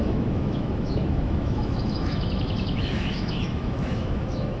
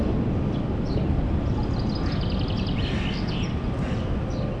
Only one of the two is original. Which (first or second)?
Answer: second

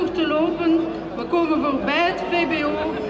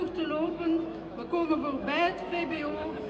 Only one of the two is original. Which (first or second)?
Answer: first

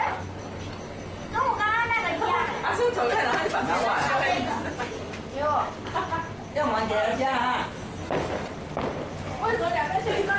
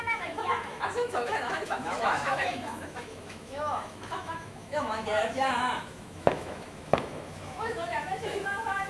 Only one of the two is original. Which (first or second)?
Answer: first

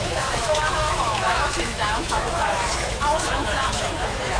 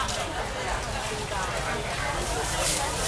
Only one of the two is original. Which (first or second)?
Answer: second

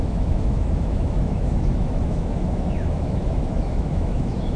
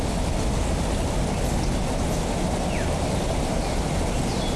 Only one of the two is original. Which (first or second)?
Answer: second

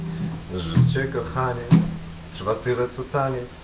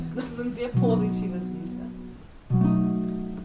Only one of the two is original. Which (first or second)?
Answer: second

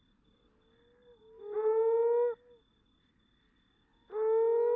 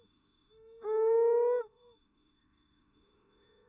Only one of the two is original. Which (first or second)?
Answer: first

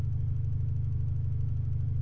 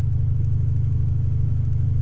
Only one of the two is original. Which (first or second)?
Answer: first